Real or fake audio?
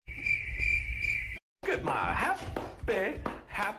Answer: fake